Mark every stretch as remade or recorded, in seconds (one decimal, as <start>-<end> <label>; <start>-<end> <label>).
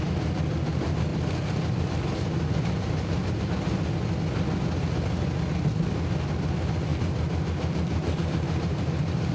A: 0.0-1.1 recorded; 1.1-3.4 remade; 3.4-6.9 recorded; 6.9-8.9 remade; 8.9-9.3 recorded